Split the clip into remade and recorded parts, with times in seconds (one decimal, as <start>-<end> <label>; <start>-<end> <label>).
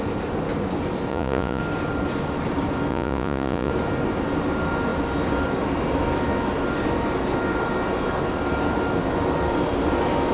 0.0-1.1 recorded; 1.1-1.6 remade; 1.6-2.9 recorded; 2.9-3.7 remade; 3.7-10.3 recorded